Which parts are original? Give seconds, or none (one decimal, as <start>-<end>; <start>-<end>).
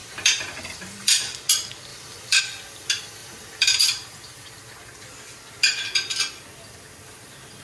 1.4-1.9; 2.4-3.2; 4.5-7.6